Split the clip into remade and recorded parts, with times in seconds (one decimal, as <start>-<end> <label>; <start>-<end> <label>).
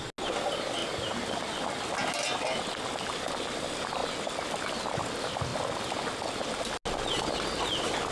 0.0-8.1 recorded